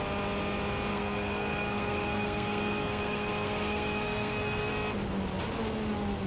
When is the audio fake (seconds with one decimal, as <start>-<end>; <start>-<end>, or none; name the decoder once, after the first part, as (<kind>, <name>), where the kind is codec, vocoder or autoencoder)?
0.9-4.7 (codec, SNAC)